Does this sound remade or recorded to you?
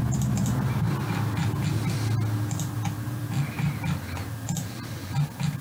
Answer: recorded